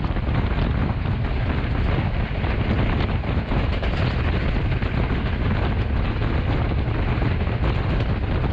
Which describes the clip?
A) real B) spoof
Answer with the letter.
A